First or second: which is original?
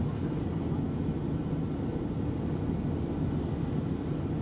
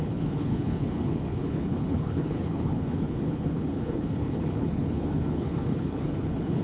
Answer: first